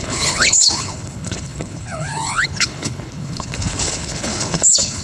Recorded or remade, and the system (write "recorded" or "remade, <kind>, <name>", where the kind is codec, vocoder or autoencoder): remade, codec, HILCodec